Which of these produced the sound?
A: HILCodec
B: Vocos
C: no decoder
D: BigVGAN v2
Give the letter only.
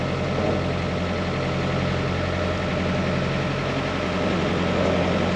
C